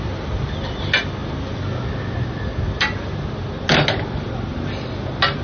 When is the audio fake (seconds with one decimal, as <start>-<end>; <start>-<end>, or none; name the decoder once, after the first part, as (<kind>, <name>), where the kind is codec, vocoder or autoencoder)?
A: none